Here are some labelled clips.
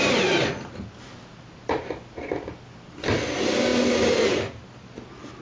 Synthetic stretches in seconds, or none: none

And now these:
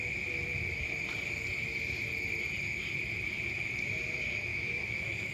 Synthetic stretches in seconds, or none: 4.5-5.3 (autoencoder, DAC-VAE)